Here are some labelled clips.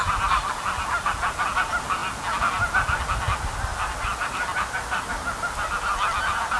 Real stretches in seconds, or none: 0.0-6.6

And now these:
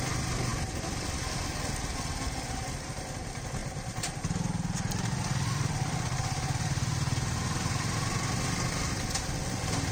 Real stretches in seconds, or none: 0.0-3.6; 4.1-9.9

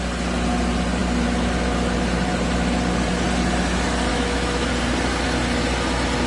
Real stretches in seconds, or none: 0.0-4.1; 4.7-6.3

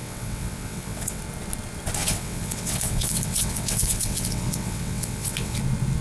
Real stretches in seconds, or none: 1.2-2.0; 5.6-6.0